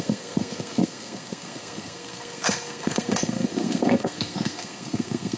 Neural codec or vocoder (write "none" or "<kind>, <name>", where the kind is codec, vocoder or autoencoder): codec, SNAC